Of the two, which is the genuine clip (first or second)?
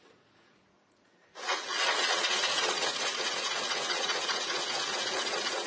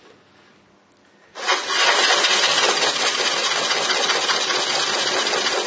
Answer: second